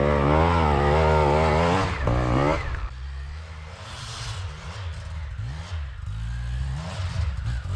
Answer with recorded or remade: recorded